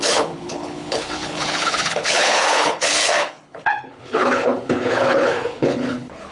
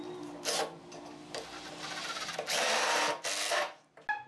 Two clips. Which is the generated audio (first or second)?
first